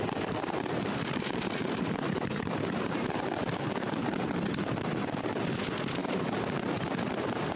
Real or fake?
fake